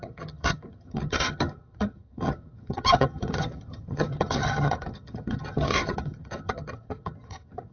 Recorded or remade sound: remade